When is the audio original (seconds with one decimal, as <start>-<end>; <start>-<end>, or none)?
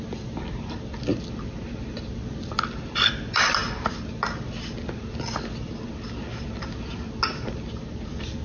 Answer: 0.0-8.4